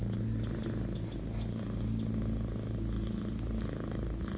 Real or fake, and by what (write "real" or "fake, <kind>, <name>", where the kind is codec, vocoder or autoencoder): real